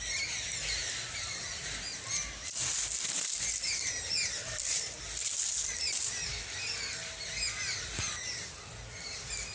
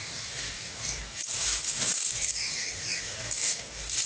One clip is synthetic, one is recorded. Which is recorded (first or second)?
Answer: first